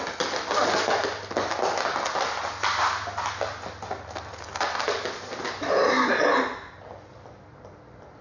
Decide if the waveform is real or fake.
real